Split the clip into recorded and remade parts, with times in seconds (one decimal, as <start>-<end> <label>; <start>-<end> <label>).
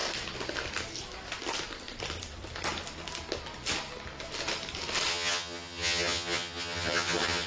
0.0-5.1 recorded; 5.1-7.5 remade